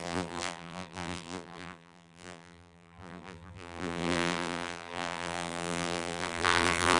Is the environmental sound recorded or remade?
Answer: remade